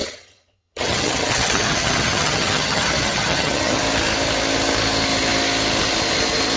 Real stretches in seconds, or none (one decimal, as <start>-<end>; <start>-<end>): 3.8-6.6